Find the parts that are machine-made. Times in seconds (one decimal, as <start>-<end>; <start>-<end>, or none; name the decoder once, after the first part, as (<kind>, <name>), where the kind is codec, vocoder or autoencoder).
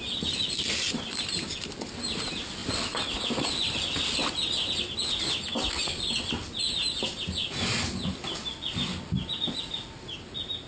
none